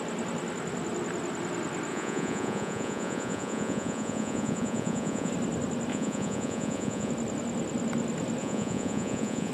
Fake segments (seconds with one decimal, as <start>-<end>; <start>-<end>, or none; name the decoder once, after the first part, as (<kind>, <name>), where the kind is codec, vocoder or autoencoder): 1.9-5.3 (vocoder, Vocos); 5.9-7.1; 8.4-9.5